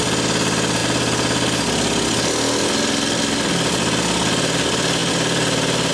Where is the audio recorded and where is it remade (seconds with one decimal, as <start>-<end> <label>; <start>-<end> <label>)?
0.0-5.9 recorded